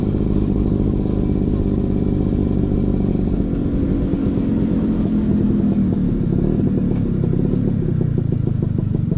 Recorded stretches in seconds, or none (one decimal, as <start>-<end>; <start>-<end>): 0.0-9.2